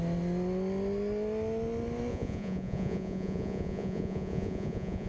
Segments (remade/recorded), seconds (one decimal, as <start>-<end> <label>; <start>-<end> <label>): 0.0-2.1 recorded; 2.1-5.1 remade